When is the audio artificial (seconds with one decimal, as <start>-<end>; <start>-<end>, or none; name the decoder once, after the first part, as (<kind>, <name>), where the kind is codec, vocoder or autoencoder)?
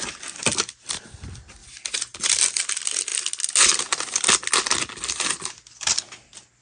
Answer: none